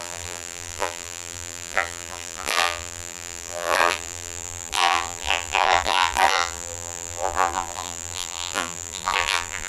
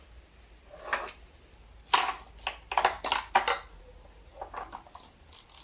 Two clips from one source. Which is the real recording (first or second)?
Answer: second